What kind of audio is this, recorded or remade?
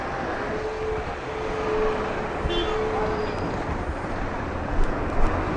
recorded